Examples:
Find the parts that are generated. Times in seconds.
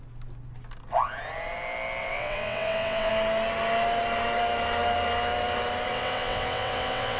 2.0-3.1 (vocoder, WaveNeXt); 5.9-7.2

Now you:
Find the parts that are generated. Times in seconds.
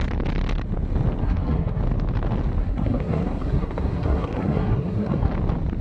1.2-1.8 (codec, SNAC); 2.6-5.3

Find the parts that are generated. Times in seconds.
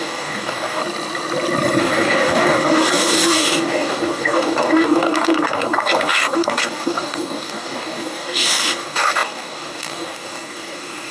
0.0-0.8 (codec, DAC); 1.8-11.1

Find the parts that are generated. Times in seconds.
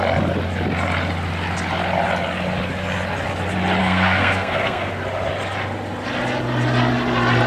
3.8-4.9 (codec, SNAC)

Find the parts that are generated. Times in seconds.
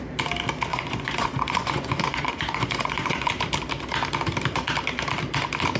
0.7-3.3 (vocoder, Vocos)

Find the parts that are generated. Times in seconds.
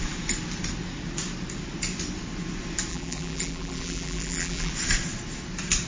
2.9-4.7 (vocoder, BigVGAN v2)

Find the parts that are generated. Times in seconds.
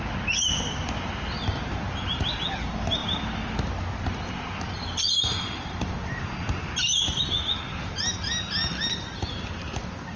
none